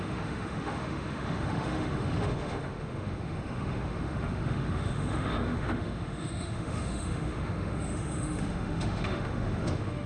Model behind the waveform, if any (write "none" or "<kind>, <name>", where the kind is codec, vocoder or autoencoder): autoencoder, DAC-VAE